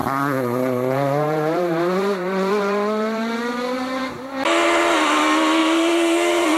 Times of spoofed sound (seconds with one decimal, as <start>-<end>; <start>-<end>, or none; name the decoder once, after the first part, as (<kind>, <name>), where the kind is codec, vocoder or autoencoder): 0.0-4.0 (vocoder, BigVGAN v2); 5.6-6.6